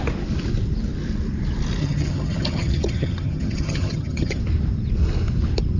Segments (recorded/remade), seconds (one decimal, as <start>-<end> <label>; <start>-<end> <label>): 0.0-1.8 recorded; 1.8-4.4 remade; 4.4-5.8 recorded